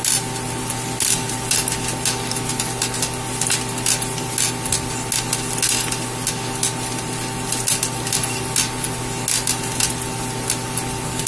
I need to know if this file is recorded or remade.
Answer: recorded